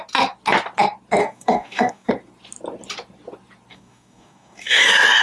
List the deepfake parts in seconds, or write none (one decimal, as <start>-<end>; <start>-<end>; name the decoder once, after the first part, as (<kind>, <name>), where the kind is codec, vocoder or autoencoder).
1.2-2.1 (codec, DAC); 3.7-4.8